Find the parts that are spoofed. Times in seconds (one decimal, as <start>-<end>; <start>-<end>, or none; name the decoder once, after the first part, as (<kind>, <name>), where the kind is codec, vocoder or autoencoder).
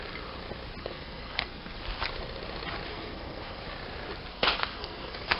0.8-1.8 (codec, SNAC); 2.9-3.6; 4.3-5.4